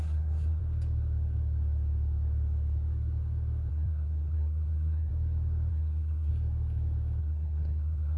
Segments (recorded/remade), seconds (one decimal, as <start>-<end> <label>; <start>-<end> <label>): 0.0-0.6 remade; 0.6-3.7 recorded; 3.7-5.1 remade; 5.1-5.7 recorded; 5.7-6.3 remade; 6.3-7.2 recorded; 7.2-8.2 remade